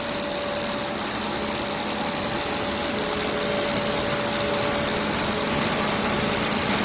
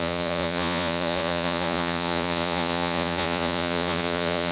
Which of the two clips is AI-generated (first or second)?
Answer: second